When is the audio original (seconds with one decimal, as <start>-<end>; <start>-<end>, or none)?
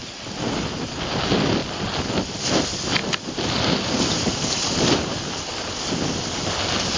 0.0-1.6; 2.5-3.0; 5.3-7.0